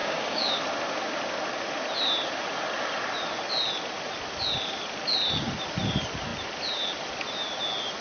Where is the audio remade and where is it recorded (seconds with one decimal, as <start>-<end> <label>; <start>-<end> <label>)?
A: 0.0-0.5 remade; 0.5-8.0 recorded